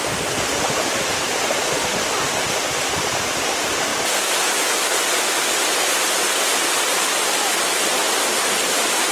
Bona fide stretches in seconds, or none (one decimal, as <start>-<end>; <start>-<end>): 0.0-9.1